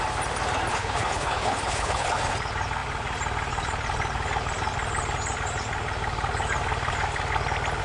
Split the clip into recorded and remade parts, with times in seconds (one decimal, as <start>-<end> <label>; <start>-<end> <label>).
0.0-0.7 recorded; 0.7-2.2 remade; 2.2-7.8 recorded